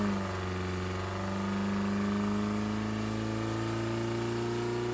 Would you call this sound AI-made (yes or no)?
no